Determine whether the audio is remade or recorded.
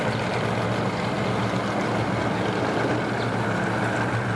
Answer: recorded